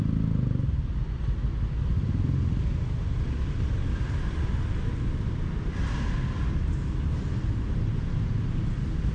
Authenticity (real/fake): real